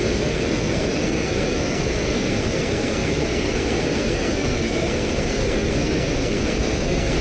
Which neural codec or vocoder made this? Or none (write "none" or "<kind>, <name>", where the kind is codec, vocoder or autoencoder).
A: codec, SNAC